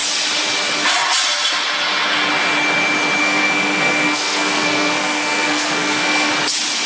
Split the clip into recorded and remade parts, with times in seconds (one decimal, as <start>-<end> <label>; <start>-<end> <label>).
0.0-3.2 recorded; 3.2-6.3 remade; 6.3-6.9 recorded

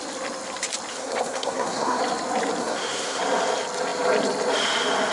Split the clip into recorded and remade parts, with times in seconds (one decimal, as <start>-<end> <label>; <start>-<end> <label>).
0.0-0.9 recorded; 0.9-2.0 remade; 2.0-2.6 recorded; 2.6-3.2 remade; 3.2-5.1 recorded

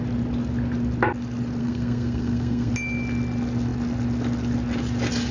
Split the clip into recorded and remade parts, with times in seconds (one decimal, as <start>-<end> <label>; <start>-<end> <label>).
0.0-1.6 recorded; 1.6-2.7 remade; 2.7-5.3 recorded

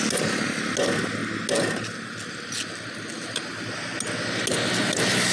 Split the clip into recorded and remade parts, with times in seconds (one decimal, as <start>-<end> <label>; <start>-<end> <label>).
0.0-5.3 recorded

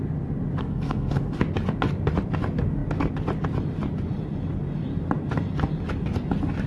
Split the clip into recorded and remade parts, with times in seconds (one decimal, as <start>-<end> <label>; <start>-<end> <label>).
0.0-0.6 recorded; 0.6-1.4 remade; 1.4-6.7 recorded